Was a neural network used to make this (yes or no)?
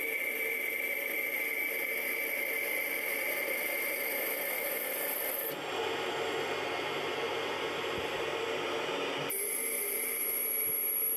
no